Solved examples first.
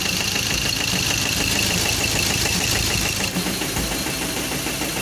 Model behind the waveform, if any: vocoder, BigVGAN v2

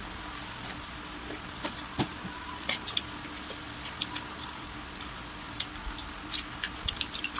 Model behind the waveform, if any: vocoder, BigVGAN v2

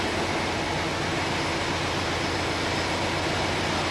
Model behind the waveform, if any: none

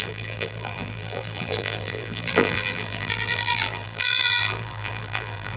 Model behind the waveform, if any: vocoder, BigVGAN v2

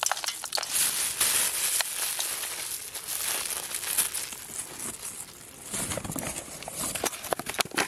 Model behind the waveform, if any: none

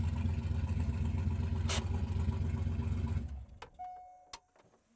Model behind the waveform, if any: none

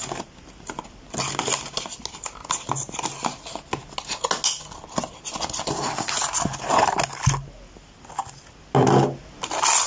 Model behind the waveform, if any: none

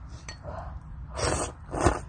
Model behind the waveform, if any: vocoder, BigVGAN v2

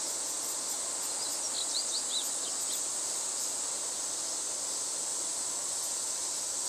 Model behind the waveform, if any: none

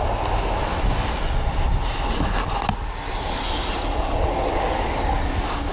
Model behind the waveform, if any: none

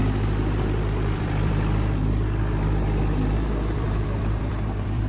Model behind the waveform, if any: vocoder, BigVGAN v2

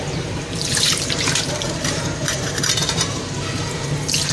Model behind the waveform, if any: vocoder, BigVGAN v2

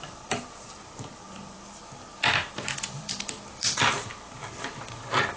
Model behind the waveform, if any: vocoder, BigVGAN v2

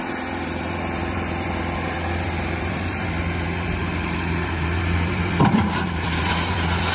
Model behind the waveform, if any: vocoder, BigVGAN v2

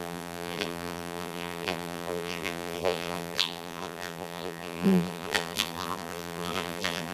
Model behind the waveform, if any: vocoder, BigVGAN v2